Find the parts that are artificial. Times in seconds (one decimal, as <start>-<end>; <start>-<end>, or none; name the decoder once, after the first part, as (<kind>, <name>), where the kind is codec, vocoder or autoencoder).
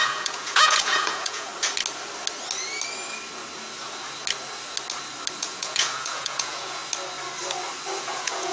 0.0-1.5 (vocoder, Vocos); 5.4-6.8; 8.0-8.5